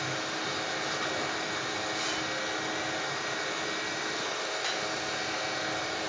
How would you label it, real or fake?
real